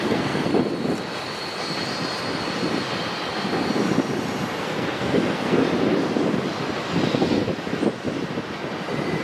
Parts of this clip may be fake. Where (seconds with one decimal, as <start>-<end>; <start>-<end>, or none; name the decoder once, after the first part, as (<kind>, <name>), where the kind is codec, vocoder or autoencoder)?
0.0-0.5 (codec, SNAC); 4.6-5.6; 7.1-7.5